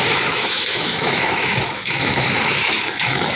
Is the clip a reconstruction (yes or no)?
yes